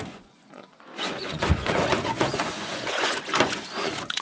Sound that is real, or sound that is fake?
fake